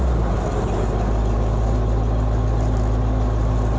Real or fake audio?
real